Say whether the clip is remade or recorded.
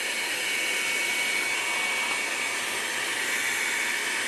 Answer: recorded